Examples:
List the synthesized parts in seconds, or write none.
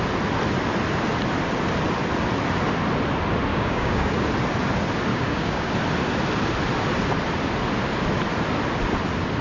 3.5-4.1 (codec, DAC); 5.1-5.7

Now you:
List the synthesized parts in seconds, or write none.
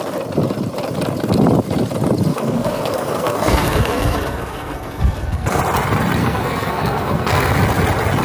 2.3-5.6 (codec, SNAC); 6.2-7.5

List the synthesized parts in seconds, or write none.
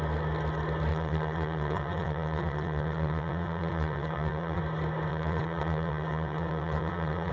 0.9-4.6 (vocoder, WaveNeXt); 5.1-7.3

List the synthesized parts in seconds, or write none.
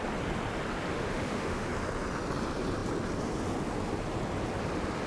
0.9-1.7 (autoencoder, DAC-VAE)